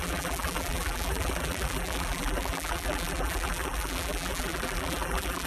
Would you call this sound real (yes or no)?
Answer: no